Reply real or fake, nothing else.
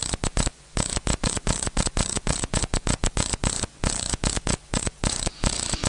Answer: fake